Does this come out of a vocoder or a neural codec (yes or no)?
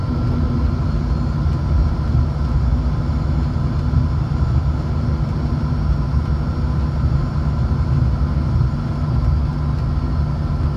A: no